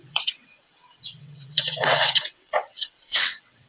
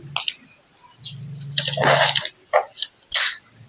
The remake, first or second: first